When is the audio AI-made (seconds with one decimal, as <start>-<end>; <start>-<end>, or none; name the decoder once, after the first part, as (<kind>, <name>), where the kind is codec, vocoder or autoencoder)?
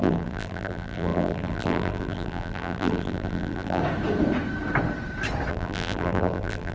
0.0-3.8 (vocoder, BigVGAN v2); 5.5-6.7